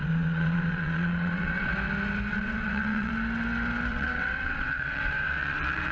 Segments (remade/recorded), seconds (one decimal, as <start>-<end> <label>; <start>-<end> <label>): 0.0-1.7 remade; 1.7-2.3 recorded; 2.3-3.1 remade; 3.1-3.9 recorded; 3.9-5.9 remade